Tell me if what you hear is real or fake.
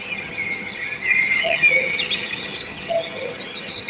fake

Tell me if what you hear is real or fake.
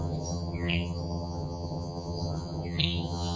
fake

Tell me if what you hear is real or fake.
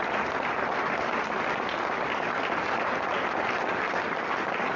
real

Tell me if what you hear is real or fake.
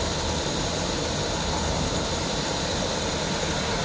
real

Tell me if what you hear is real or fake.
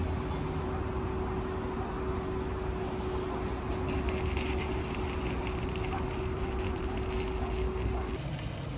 real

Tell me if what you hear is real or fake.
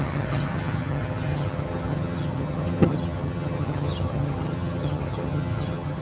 fake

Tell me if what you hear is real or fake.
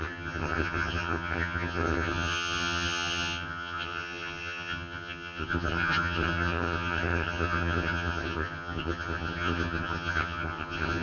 fake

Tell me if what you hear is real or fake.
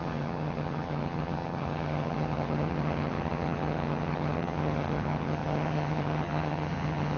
fake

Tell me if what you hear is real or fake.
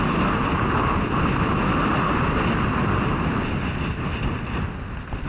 real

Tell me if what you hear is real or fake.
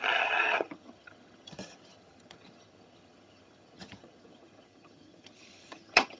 fake